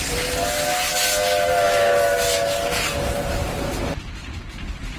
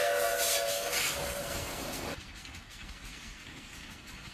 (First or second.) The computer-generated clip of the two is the second